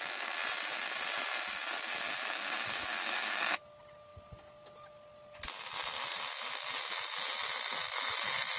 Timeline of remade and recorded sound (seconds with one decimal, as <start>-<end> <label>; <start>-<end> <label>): 0.0-2.1 recorded; 2.1-3.6 remade; 3.6-8.6 recorded